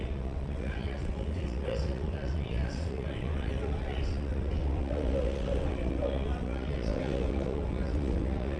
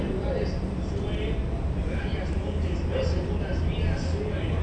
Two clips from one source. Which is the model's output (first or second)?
first